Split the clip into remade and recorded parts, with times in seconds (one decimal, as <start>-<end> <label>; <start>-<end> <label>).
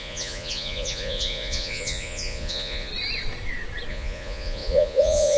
0.0-2.9 remade; 2.9-3.9 recorded; 3.9-5.4 remade